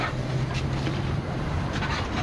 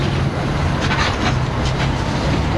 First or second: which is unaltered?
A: second